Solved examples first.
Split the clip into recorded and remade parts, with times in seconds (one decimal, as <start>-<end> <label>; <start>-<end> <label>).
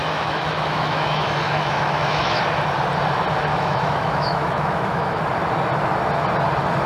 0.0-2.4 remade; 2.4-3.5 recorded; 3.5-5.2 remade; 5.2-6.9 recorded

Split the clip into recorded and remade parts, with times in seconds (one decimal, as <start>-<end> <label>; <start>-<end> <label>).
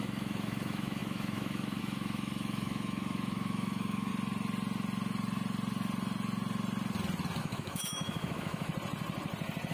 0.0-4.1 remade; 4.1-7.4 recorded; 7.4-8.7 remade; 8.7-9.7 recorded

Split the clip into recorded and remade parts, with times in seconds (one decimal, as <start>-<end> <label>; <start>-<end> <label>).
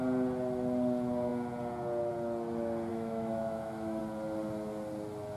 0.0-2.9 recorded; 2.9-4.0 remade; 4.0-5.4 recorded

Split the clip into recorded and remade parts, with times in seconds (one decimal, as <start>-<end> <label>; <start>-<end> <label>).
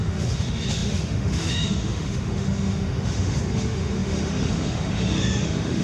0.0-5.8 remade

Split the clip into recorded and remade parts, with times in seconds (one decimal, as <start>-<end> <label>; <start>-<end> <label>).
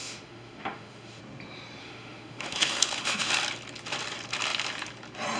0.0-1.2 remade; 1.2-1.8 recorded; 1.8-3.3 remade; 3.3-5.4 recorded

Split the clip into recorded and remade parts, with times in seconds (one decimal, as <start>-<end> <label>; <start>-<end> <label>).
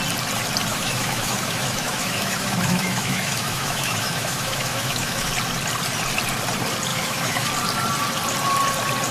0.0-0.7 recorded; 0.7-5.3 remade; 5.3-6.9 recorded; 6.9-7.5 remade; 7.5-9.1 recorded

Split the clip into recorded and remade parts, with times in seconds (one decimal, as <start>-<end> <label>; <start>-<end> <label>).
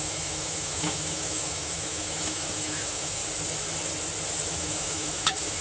0.0-3.2 remade; 3.2-4.6 recorded; 4.6-5.6 remade